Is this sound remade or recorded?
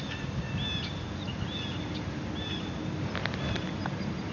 recorded